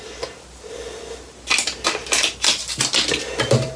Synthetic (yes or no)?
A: no